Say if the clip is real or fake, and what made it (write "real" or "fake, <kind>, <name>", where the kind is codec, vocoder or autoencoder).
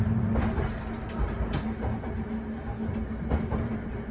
real